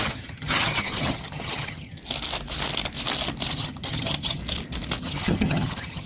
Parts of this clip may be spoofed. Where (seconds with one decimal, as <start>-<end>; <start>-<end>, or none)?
0.0-2.0; 3.5-4.4; 5.0-6.1